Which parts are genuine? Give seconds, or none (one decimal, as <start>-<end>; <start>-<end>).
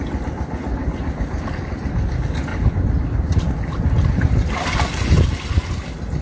2.5-6.2